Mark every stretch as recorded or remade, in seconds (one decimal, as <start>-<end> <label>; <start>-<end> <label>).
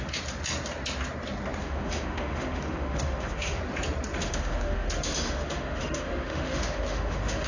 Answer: 0.0-1.6 recorded; 1.6-3.6 remade; 3.6-4.2 recorded; 4.2-7.5 remade